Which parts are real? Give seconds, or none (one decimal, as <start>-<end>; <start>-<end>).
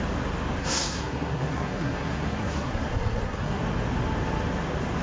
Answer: 0.0-0.6; 3.6-5.0